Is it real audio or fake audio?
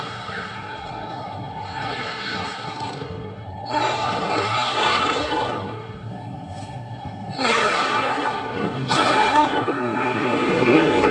fake